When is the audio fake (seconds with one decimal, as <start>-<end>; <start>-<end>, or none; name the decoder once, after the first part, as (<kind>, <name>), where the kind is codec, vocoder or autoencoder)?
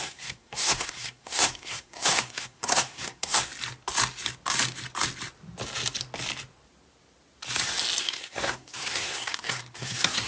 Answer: 0.0-3.5 (codec, SNAC); 8.0-10.3